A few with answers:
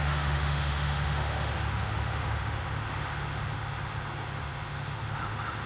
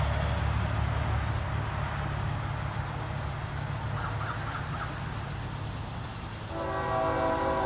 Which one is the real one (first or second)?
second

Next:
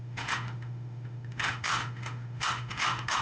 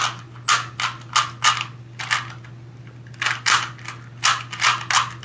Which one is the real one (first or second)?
second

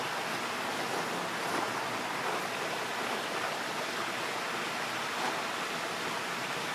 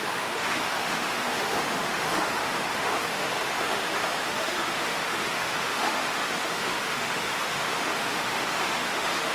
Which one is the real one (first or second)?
first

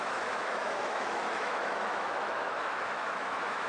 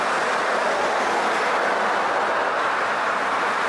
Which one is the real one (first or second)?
second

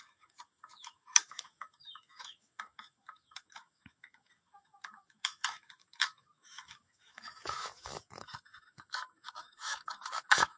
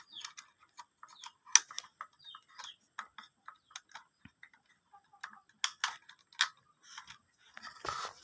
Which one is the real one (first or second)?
second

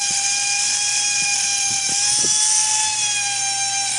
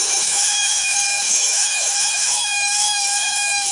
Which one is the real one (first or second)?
first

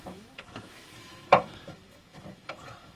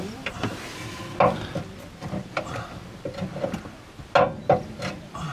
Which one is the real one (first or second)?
second